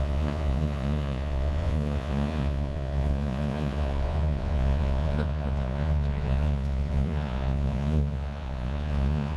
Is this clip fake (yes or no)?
yes